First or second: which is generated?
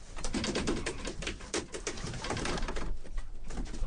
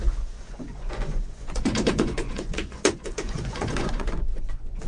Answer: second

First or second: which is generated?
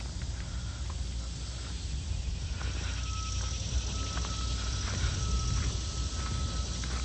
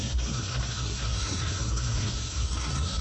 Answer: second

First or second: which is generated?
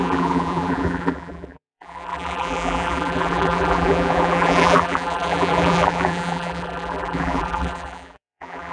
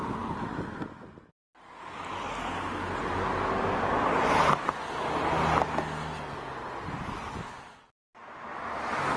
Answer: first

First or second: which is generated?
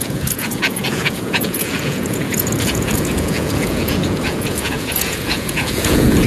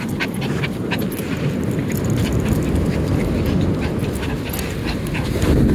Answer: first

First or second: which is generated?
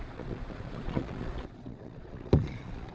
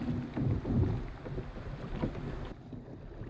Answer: first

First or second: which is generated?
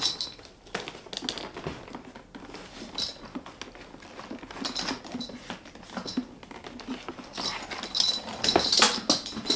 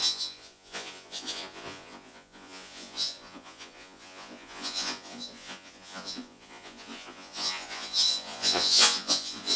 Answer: second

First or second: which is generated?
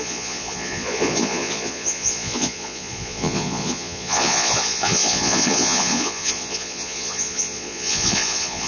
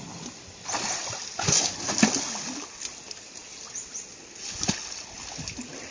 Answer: first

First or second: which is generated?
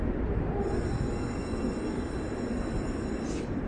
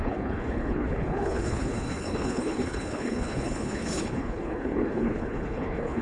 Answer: second